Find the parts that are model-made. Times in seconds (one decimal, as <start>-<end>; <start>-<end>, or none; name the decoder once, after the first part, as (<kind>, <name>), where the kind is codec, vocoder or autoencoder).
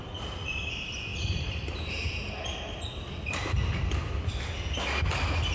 none